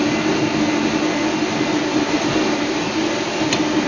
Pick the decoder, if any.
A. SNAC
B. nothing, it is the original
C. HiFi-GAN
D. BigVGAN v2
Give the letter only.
B